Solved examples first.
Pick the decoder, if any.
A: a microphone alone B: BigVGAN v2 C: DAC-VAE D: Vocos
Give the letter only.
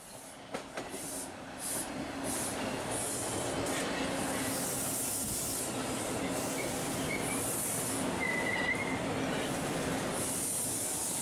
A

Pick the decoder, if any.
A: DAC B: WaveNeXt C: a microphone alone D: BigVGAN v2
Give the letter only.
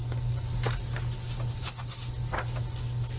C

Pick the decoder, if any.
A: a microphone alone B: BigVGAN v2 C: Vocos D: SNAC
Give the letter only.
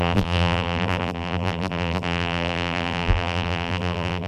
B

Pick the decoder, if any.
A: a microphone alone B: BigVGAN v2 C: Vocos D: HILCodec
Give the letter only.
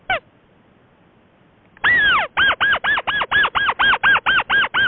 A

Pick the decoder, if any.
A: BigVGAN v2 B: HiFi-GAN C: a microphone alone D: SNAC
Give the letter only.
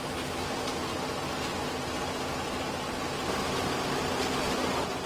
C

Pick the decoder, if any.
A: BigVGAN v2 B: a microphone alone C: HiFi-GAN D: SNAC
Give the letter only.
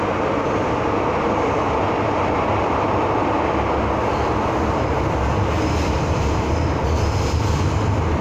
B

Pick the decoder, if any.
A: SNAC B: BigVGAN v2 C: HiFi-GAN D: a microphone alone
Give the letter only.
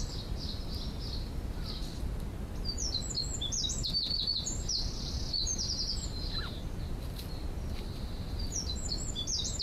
D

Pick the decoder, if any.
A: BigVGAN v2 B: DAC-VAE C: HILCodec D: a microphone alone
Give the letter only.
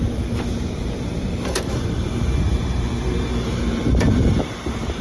A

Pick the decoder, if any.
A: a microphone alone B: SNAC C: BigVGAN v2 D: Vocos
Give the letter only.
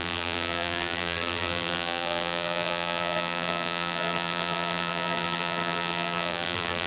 C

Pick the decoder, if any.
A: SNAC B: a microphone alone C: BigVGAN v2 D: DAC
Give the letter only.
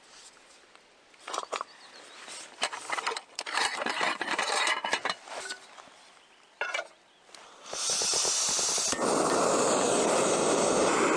B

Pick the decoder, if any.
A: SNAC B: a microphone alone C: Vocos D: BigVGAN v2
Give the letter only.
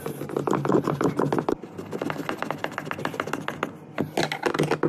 B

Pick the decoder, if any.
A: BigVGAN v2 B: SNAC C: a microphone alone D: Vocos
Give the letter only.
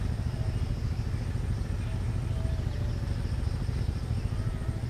C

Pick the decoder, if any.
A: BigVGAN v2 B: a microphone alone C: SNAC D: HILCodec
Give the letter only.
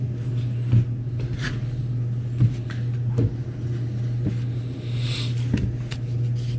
B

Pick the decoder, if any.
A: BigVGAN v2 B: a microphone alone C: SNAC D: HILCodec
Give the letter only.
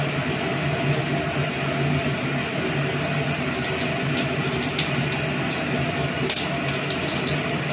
B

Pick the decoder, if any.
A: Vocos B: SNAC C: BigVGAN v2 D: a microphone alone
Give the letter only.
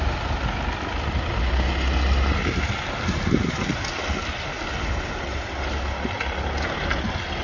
D